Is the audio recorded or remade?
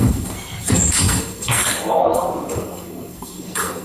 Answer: remade